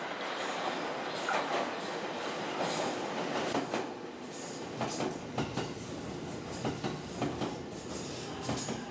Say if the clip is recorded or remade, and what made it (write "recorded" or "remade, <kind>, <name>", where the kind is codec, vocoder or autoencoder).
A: recorded